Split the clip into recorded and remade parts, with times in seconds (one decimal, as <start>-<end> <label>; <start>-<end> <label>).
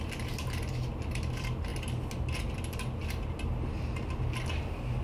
0.0-5.0 recorded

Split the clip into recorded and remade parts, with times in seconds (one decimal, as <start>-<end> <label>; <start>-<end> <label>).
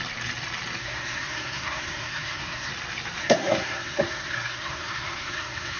0.0-0.8 recorded; 0.8-2.7 remade; 2.7-3.2 recorded; 3.2-5.8 remade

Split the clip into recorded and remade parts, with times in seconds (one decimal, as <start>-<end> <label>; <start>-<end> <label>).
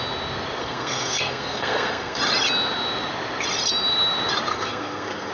0.0-0.6 recorded; 0.6-2.2 remade; 2.2-4.5 recorded; 4.5-5.3 remade